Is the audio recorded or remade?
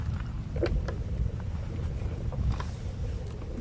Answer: recorded